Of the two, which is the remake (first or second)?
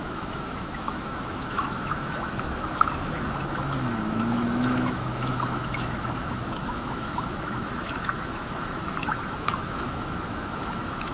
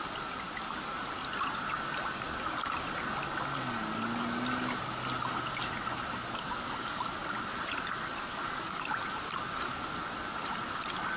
first